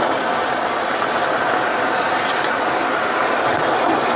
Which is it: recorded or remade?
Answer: recorded